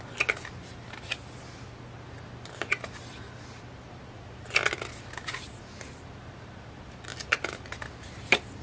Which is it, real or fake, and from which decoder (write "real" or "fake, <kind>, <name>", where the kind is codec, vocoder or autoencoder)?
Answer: real